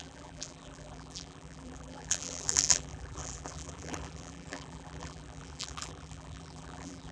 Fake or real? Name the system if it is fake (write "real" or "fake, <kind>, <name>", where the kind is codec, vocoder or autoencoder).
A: fake, vocoder, BigVGAN v2